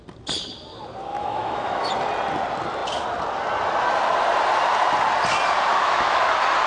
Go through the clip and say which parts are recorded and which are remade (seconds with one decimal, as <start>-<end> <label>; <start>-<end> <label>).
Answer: 0.0-1.1 recorded; 1.1-1.9 remade; 1.9-5.7 recorded; 5.7-6.3 remade; 6.3-6.7 recorded

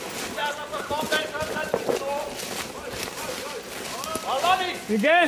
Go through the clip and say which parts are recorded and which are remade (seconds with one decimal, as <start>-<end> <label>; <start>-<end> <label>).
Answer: 0.0-5.3 recorded

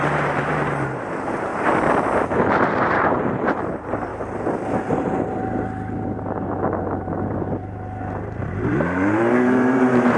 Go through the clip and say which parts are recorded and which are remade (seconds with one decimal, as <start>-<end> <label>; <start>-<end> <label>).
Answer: 0.0-1.5 remade; 1.5-2.3 recorded; 2.3-4.1 remade; 4.1-8.4 recorded; 8.4-10.2 remade